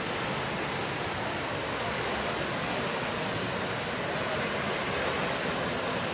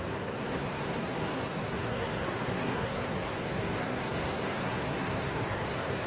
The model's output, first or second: second